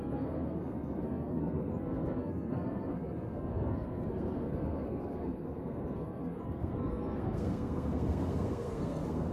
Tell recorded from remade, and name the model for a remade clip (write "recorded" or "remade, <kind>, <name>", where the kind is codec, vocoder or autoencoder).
remade, codec, SNAC